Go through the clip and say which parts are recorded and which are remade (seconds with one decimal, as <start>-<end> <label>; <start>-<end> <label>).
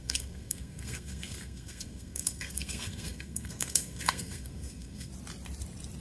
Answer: 0.0-5.1 remade; 5.1-6.0 recorded